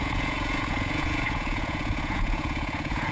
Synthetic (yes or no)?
yes